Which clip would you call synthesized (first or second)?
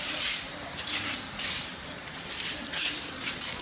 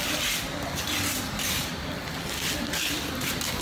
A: first